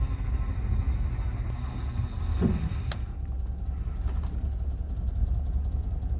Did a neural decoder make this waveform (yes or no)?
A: no